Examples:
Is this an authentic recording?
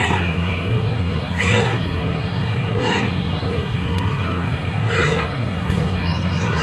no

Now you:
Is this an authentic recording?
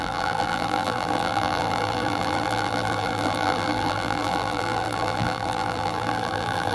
no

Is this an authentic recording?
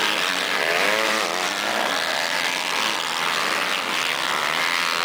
yes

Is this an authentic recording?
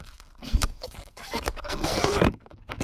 no